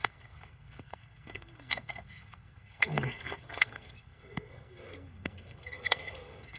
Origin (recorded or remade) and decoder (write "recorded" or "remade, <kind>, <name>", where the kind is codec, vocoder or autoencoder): remade, codec, SNAC